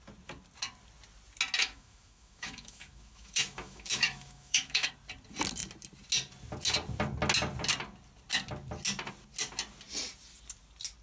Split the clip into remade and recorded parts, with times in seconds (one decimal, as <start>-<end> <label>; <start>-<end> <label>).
0.0-1.6 recorded; 1.6-4.9 remade; 4.9-11.0 recorded